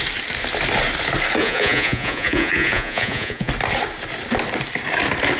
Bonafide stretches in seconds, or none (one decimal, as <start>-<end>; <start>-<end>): 0.0-1.4; 3.5-5.4